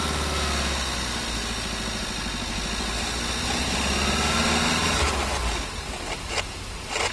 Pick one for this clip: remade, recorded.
recorded